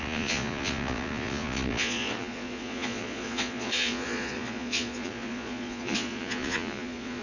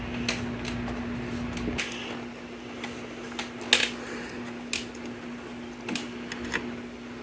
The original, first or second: second